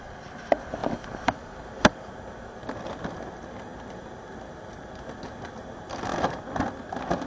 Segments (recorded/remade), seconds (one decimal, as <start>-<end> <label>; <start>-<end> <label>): 0.0-7.3 remade